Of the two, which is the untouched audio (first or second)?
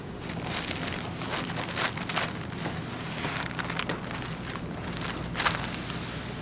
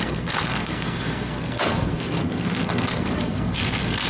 first